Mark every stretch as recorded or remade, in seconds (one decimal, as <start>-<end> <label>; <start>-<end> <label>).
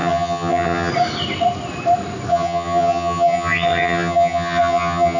0.0-0.9 remade; 0.9-2.3 recorded; 2.3-5.2 remade